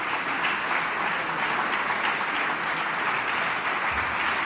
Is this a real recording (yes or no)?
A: yes